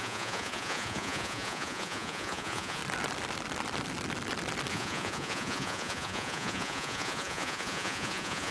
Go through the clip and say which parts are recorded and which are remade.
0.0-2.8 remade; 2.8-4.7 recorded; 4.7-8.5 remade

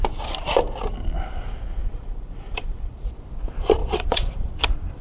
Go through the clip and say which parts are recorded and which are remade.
0.0-1.8 recorded; 1.8-3.2 remade; 3.2-3.8 recorded; 3.8-4.5 remade; 4.5-5.0 recorded

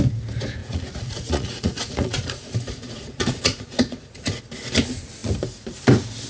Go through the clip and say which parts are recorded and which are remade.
0.0-0.6 recorded; 0.6-4.4 remade; 4.4-6.3 recorded

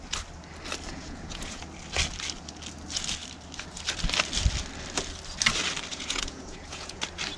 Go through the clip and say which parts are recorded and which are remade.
0.0-0.9 recorded; 0.9-1.6 remade; 1.6-5.9 recorded; 5.9-7.0 remade; 7.0-7.4 recorded